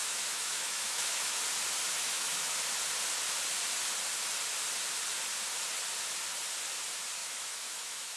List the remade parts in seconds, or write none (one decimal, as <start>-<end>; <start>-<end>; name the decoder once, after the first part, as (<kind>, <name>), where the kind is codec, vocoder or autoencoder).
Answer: 0.0-1.4 (autoencoder, DAC-VAE); 2.0-2.6; 7.2-8.2